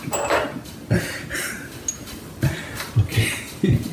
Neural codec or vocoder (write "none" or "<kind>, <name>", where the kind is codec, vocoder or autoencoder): none